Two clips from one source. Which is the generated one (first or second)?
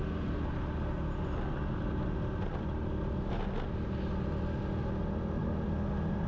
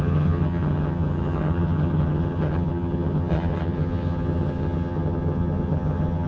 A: second